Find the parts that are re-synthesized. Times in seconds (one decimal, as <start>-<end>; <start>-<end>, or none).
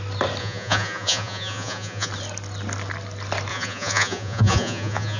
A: 0.4-2.1; 3.5-5.2